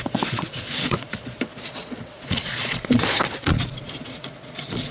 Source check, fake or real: fake